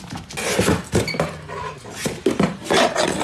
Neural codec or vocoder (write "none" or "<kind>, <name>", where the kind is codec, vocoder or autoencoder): none